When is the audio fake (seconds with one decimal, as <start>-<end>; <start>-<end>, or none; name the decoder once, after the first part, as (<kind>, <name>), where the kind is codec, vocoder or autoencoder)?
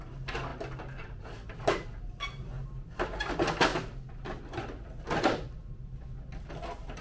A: none